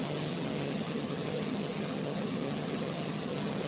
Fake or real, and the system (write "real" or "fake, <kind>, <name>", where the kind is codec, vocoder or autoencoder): fake, vocoder, HiFi-GAN